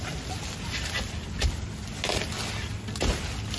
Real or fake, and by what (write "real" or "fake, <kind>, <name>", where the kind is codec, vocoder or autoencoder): real